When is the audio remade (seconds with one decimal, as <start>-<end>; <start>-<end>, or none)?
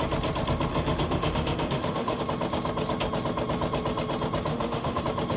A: 0.7-2.2; 4.5-5.0